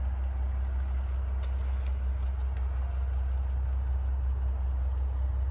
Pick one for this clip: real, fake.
real